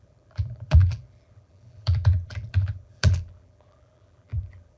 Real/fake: fake